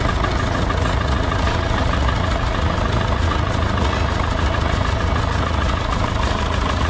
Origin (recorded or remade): remade